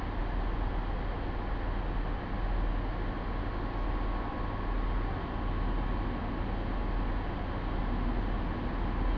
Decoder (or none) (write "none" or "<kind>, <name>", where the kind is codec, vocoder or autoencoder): none